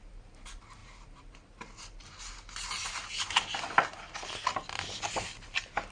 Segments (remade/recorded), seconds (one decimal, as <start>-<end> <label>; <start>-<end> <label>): 0.0-5.9 recorded

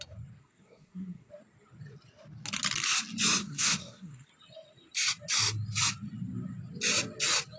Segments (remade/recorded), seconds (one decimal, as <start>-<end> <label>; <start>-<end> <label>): 0.0-0.4 recorded; 0.4-1.3 remade; 1.3-3.4 recorded; 3.4-4.3 remade; 4.3-7.6 recorded

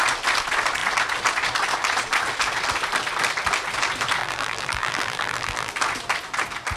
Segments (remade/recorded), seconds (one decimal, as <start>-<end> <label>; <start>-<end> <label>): 0.0-4.2 recorded; 4.2-5.7 remade; 5.7-6.8 recorded

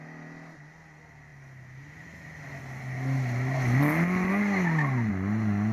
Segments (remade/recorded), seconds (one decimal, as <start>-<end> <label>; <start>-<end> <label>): 0.0-5.7 recorded

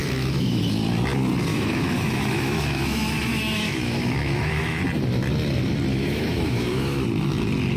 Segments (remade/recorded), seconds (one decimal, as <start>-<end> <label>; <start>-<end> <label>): 0.0-0.6 remade; 0.6-1.5 recorded; 1.5-4.8 remade; 4.8-5.9 recorded; 5.9-7.0 remade; 7.0-7.8 recorded